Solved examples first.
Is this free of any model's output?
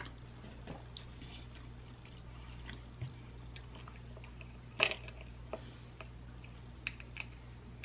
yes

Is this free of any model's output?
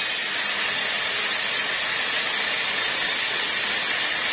yes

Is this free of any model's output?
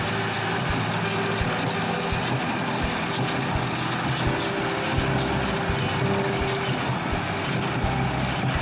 yes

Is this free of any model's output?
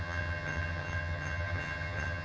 no